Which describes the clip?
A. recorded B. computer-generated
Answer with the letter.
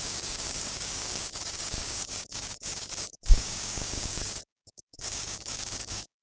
B